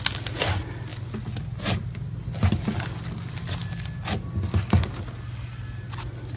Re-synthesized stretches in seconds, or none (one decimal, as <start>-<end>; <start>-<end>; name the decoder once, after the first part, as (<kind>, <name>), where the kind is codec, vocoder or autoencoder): none